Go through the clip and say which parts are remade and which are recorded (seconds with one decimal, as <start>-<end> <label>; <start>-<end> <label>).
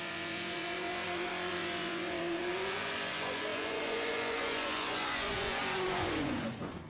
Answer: 0.0-6.9 remade